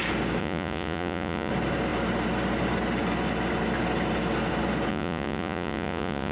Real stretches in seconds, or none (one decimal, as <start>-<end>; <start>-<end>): 0.0-0.4; 1.5-4.9